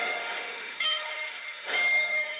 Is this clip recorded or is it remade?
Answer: remade